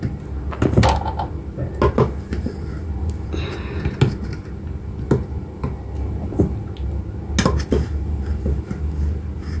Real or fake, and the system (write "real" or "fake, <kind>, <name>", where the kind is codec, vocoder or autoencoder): real